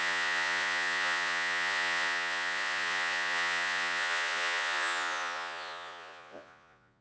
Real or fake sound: fake